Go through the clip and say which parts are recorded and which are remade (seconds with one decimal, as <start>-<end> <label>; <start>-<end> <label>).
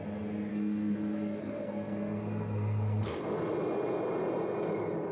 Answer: 0.0-0.5 recorded; 0.5-3.3 remade; 3.3-5.1 recorded